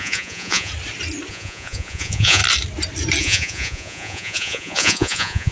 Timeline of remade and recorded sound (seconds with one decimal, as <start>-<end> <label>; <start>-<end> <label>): 0.0-0.7 remade; 0.7-1.3 recorded; 1.3-2.4 remade; 2.4-3.2 recorded; 3.2-5.5 remade

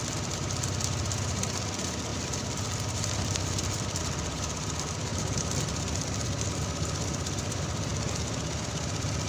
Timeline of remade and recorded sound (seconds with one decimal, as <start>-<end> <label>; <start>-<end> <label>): 0.0-0.6 remade; 0.6-2.1 recorded; 2.1-4.0 remade; 4.0-5.1 recorded; 5.1-5.6 remade; 5.6-9.3 recorded

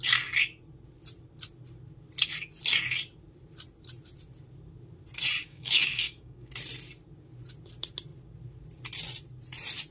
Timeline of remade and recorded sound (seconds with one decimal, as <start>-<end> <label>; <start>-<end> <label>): 0.0-5.4 recorded; 5.4-6.5 remade; 6.5-9.9 recorded

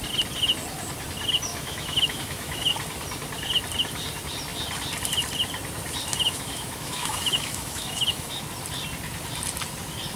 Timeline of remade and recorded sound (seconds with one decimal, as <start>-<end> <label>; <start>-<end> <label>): 0.0-1.5 recorded; 1.5-2.7 remade; 2.7-6.1 recorded; 6.1-8.3 remade; 8.3-10.2 recorded

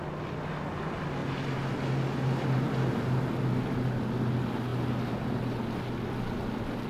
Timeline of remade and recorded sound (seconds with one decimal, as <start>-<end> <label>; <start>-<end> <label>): 0.0-6.9 recorded